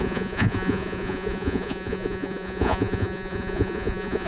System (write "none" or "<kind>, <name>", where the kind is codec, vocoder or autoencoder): vocoder, Vocos